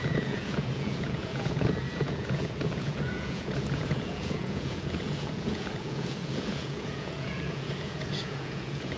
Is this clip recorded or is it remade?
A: remade